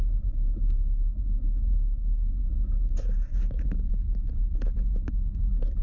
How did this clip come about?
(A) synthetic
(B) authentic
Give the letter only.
B